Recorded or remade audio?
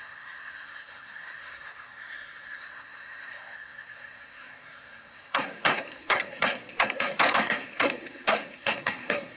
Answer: remade